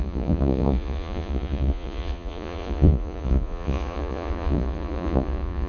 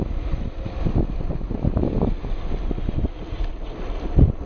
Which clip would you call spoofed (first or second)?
first